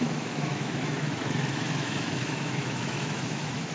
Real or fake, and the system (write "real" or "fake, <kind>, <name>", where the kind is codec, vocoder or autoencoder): fake, autoencoder, DAC-VAE